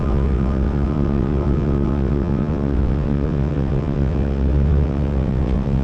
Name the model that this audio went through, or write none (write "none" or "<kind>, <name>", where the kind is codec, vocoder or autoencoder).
vocoder, WaveNeXt